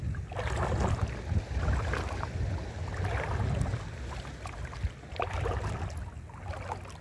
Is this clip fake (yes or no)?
no